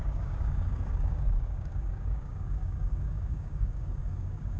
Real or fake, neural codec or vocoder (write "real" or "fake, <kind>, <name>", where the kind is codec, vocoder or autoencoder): fake, codec, DAC